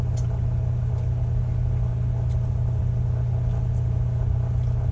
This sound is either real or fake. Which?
real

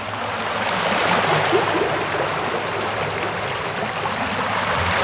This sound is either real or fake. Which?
real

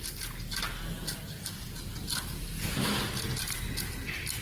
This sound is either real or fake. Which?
real